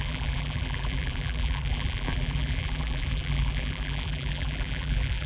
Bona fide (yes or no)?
no